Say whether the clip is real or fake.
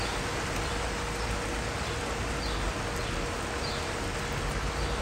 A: real